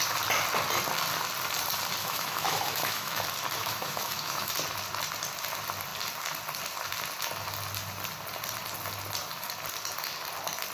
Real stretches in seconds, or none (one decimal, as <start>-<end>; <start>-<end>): 0.0-2.0; 3.2-3.6; 4.5-10.7